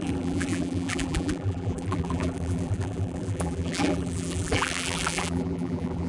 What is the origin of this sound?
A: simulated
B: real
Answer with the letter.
A